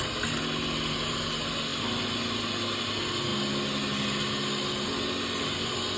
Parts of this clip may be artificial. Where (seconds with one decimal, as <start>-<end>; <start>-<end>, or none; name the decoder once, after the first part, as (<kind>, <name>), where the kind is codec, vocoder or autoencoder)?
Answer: none